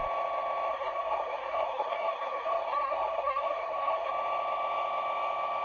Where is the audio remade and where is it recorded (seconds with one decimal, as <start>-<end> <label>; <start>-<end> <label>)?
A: 0.0-0.7 recorded; 0.7-4.1 remade; 4.1-5.6 recorded